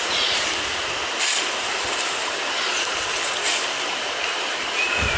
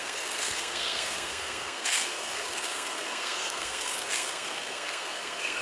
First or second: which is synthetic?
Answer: second